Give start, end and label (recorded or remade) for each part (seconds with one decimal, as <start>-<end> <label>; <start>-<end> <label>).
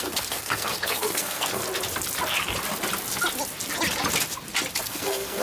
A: 0.0-1.6 remade; 1.6-4.8 recorded; 4.8-5.4 remade